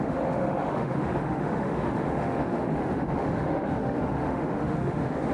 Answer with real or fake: fake